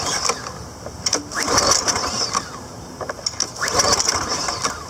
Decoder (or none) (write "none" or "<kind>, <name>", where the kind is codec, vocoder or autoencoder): none